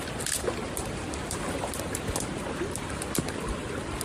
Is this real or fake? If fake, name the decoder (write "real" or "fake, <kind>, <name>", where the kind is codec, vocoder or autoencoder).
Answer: real